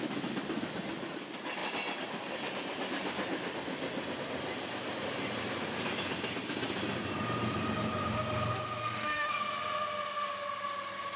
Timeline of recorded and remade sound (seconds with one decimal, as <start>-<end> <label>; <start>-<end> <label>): 0.0-8.8 recorded; 8.8-9.3 remade; 9.3-11.2 recorded